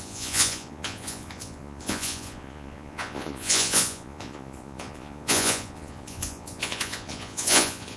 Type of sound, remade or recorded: remade